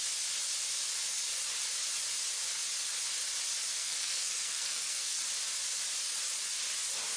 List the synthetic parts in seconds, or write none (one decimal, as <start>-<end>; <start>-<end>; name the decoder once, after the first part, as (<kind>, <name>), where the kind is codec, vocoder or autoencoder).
3.7-5.2 (codec, SNAC)